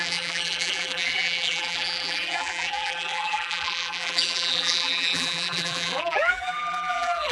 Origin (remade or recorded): remade